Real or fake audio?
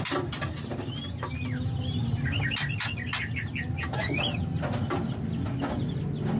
real